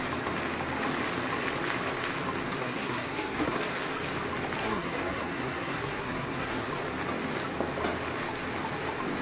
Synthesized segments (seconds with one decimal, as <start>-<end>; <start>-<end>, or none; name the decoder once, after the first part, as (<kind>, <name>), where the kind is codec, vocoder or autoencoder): 2.6-3.6 (codec, SNAC); 4.6-6.7